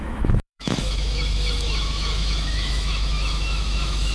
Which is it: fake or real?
fake